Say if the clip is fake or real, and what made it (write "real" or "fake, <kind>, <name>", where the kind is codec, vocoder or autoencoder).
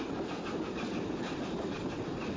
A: fake, vocoder, BigVGAN v2